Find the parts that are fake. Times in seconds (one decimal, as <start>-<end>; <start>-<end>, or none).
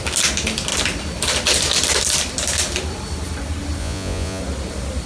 3.8-4.4